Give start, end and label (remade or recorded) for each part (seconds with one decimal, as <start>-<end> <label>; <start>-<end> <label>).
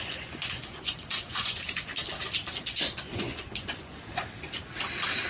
0.0-1.9 remade; 1.9-2.6 recorded; 2.6-4.7 remade; 4.7-5.3 recorded